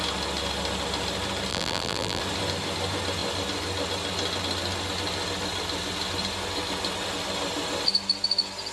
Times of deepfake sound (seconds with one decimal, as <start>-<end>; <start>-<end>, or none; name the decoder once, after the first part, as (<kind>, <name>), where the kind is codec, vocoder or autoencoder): 1.5-2.2 (vocoder, BigVGAN v2)